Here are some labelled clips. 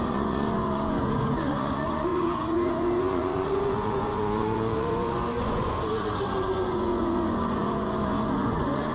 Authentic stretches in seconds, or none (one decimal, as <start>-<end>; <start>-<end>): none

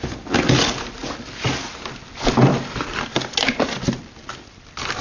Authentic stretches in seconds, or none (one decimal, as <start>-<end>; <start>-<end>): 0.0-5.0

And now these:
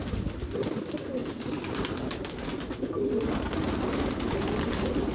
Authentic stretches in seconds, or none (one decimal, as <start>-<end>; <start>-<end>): 0.0-5.1

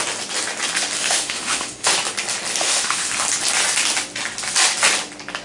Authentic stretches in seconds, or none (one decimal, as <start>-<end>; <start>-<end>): 0.0-1.0; 1.9-2.6; 3.1-5.4